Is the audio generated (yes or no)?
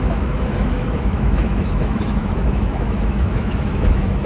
yes